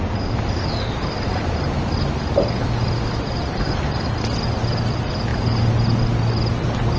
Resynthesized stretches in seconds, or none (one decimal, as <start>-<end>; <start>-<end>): none